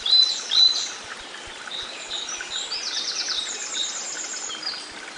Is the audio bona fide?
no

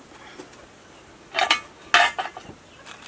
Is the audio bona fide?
yes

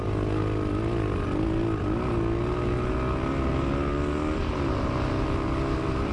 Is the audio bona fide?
yes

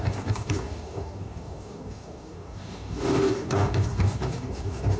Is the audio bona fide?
no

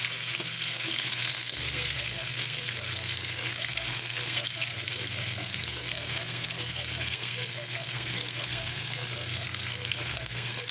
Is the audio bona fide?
no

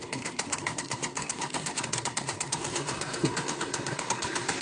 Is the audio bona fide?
no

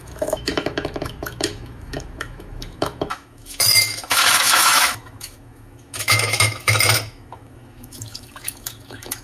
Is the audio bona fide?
no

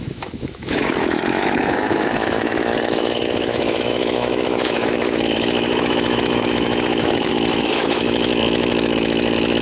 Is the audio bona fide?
no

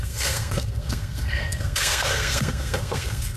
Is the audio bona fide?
no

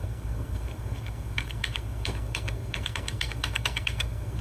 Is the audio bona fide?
no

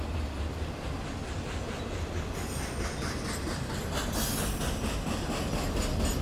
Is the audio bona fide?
yes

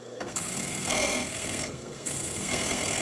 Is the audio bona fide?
no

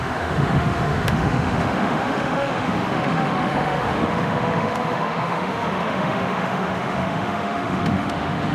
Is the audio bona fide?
no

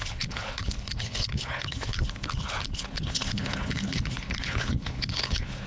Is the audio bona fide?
no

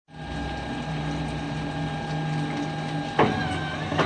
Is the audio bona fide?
yes